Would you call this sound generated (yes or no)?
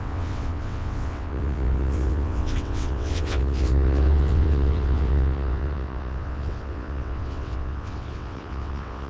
yes